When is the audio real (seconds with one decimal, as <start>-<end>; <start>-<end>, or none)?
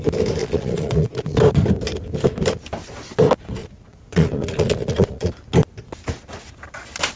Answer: 0.0-0.4; 1.4-3.6; 5.3-7.2